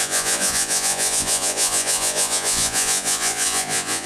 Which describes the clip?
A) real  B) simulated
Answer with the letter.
B